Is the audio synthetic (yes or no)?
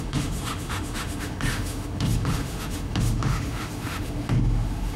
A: yes